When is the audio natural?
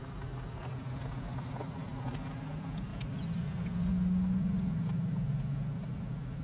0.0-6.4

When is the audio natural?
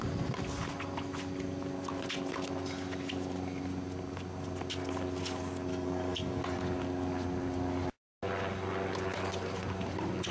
0.0-5.7; 6.4-10.3